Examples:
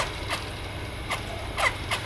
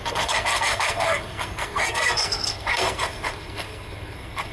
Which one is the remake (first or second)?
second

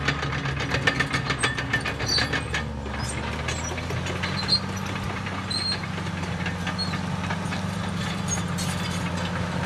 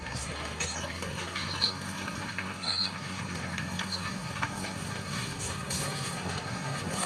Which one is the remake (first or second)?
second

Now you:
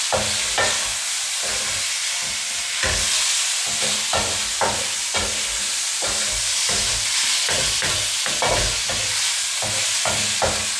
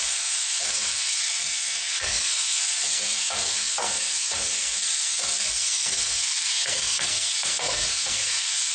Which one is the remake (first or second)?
second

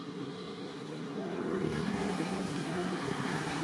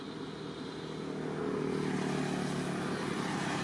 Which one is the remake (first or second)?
first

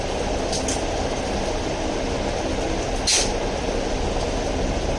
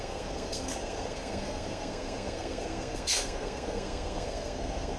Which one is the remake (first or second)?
second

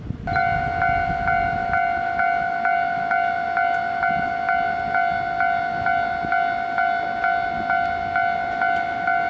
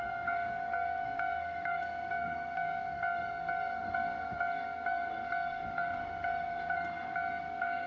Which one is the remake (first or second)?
second